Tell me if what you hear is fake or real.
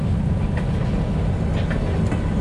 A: real